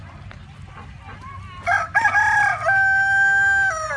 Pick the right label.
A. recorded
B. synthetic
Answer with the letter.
A